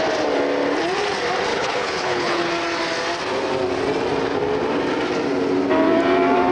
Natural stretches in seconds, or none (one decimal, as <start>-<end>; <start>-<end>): 0.0-1.5; 2.5-6.5